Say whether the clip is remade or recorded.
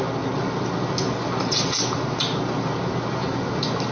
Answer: recorded